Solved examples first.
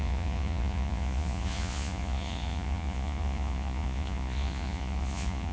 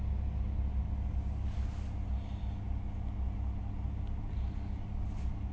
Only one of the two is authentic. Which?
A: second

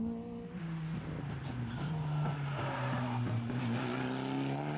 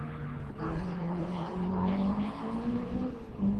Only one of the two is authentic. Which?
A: first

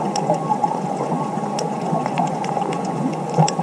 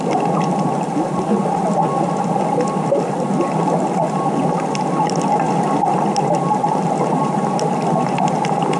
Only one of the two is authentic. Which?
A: second